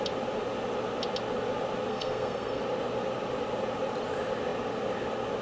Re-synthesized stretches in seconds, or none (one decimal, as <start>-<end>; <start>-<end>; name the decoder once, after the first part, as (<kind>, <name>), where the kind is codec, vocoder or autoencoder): 1.9-2.6 (codec, SNAC)